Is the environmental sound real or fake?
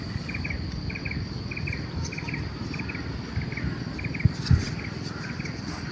real